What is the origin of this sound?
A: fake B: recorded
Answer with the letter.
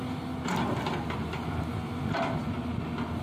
B